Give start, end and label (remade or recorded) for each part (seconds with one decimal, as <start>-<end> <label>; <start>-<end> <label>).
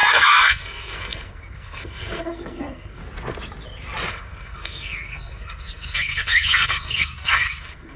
0.0-3.0 remade; 3.0-4.1 recorded; 4.1-8.0 remade